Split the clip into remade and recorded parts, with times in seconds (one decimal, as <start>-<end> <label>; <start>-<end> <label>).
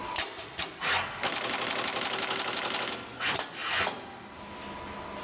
0.0-5.2 recorded